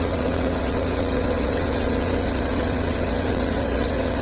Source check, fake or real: fake